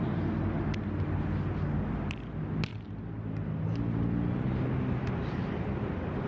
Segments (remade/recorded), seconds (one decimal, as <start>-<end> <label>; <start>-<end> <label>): 0.0-6.3 recorded